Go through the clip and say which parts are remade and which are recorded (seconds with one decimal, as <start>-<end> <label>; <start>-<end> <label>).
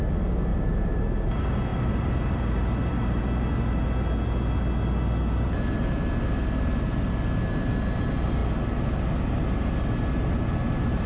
0.0-0.5 recorded; 0.5-1.0 remade; 1.0-1.7 recorded; 1.7-3.2 remade; 3.2-11.1 recorded